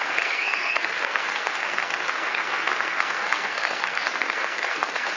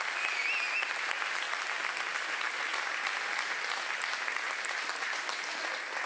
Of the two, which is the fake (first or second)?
first